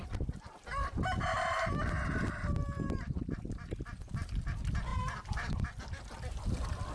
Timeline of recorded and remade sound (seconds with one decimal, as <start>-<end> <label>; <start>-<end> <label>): 0.0-6.9 recorded